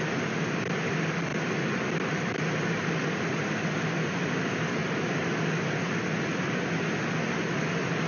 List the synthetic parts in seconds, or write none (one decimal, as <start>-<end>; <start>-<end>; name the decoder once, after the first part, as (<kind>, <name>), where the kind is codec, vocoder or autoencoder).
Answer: none

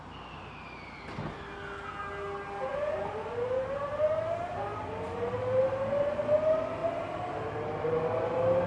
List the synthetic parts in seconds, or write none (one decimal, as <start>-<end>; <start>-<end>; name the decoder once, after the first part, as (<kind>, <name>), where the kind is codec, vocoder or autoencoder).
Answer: none